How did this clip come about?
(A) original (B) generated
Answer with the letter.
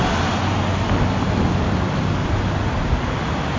A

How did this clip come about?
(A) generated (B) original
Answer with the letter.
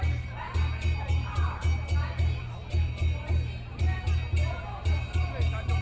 B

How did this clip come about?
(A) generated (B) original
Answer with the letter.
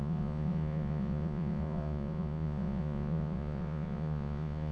A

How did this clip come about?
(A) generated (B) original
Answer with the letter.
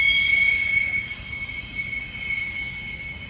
A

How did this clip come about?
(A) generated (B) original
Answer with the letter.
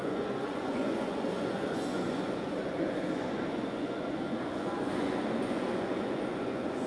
A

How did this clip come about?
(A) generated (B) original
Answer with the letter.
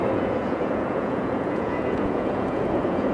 A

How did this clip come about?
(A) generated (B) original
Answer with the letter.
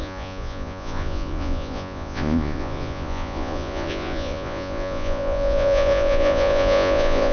A